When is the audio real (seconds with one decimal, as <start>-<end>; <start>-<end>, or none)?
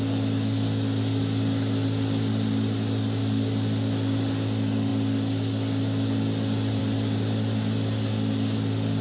0.0-9.0